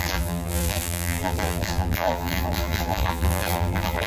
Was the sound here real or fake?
fake